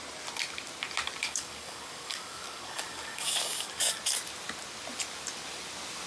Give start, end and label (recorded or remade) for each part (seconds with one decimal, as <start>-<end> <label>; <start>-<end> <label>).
0.0-1.2 recorded; 1.2-4.0 remade; 4.0-6.1 recorded

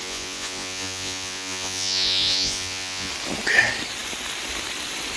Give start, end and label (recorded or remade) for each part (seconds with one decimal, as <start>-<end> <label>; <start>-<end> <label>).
0.0-3.1 remade; 3.1-5.2 recorded

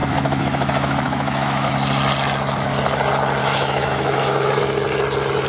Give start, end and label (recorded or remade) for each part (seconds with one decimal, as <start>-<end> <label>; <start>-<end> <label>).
0.0-1.7 remade; 1.7-3.4 recorded; 3.4-4.6 remade; 4.6-5.5 recorded

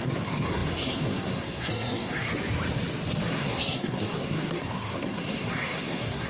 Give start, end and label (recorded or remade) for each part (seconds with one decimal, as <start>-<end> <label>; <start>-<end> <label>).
0.0-2.3 remade; 2.3-3.3 recorded; 3.3-6.3 remade

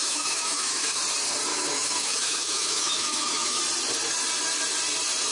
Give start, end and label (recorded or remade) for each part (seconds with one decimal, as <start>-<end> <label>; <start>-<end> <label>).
0.0-1.0 remade; 1.0-1.5 recorded; 1.5-3.6 remade; 3.6-5.3 recorded